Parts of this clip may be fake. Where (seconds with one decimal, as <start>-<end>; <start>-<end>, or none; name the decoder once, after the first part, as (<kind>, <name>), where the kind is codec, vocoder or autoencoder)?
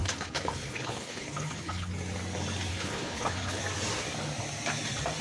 0.0-1.9 (codec, HILCodec); 2.7-3.6